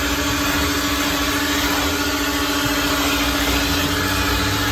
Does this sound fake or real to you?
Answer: real